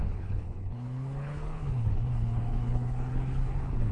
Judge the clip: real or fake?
fake